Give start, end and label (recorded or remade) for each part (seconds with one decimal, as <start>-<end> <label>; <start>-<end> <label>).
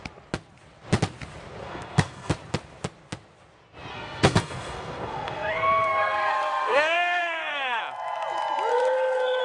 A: 0.0-1.6 recorded; 1.6-2.3 remade; 2.3-3.9 recorded; 3.9-7.8 remade; 7.8-8.7 recorded; 8.7-9.4 remade